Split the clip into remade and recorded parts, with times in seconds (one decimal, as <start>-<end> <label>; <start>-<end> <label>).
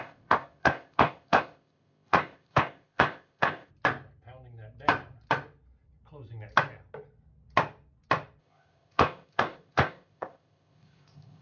0.0-3.7 remade; 3.7-8.4 recorded; 8.4-11.4 remade